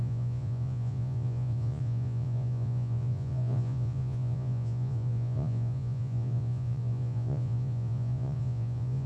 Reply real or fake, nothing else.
fake